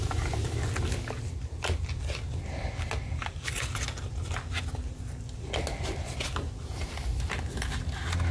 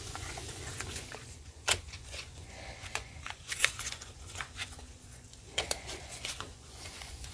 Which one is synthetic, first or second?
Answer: second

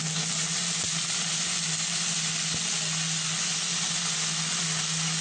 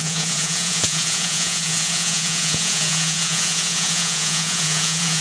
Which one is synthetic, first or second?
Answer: second